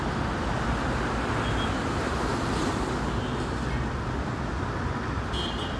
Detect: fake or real real